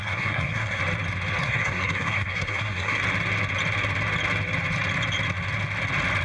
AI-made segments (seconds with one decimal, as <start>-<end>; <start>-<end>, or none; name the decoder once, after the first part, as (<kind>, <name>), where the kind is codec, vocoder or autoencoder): 0.0-0.8 (codec, SNAC); 1.4-3.0